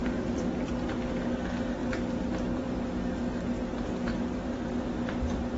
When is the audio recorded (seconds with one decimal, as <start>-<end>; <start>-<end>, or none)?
0.6-1.8; 3.0-4.1; 4.7-5.6